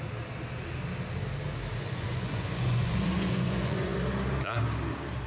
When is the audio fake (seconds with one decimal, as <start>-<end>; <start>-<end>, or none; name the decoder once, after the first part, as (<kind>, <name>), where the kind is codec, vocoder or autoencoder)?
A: 1.9-3.9 (vocoder, Vocos)